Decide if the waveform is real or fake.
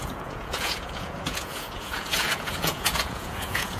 fake